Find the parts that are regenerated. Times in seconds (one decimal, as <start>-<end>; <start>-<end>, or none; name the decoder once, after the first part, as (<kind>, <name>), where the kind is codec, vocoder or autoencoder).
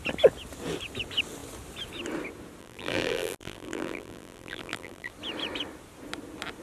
2.6-5.1 (vocoder, BigVGAN v2)